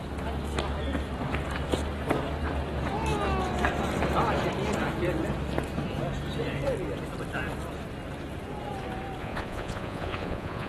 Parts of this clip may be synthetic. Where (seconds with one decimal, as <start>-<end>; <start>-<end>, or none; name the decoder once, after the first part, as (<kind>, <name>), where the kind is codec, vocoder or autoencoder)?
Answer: 9.2-10.7 (vocoder, Vocos)